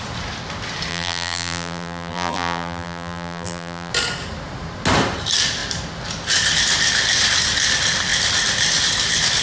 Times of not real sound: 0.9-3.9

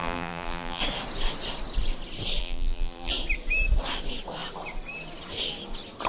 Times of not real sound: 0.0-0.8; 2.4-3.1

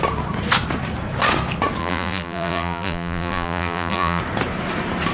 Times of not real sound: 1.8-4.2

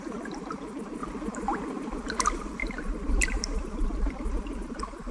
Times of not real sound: 0.0-1.0; 2.2-2.6

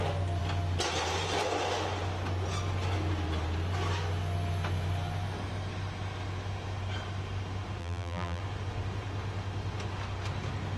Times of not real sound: 7.8-8.4

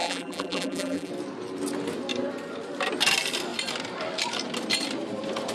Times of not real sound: 0.0-1.1